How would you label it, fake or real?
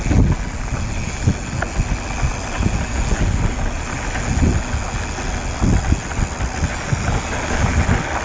real